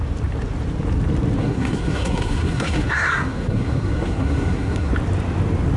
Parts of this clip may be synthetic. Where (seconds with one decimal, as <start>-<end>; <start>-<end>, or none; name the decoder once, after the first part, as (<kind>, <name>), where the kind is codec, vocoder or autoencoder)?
1.4-4.9 (codec, SNAC)